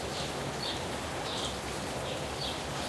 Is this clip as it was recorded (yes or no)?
yes